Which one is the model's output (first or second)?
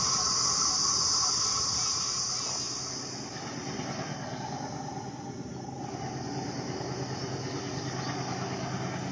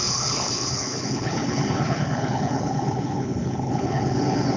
second